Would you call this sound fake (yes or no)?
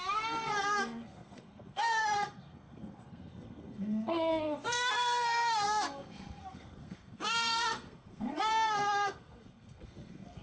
yes